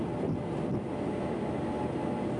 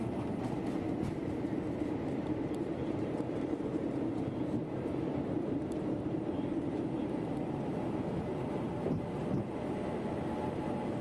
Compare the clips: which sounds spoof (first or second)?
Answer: second